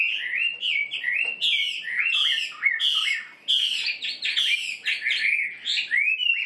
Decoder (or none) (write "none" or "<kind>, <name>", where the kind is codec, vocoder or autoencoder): none